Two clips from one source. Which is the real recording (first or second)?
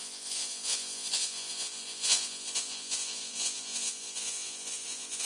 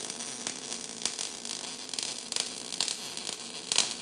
second